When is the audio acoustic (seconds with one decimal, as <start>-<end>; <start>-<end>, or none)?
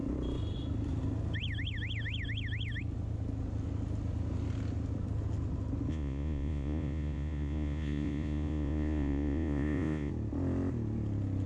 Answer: 0.0-5.9; 10.1-11.5